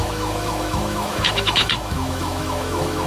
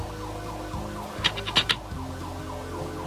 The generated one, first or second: first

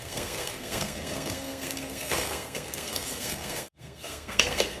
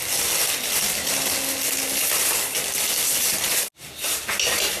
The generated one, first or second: first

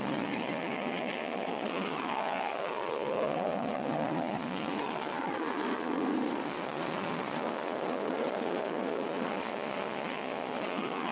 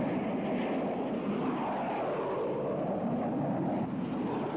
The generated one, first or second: first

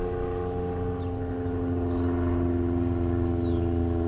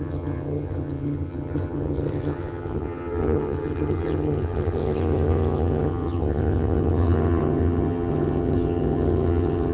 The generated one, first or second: second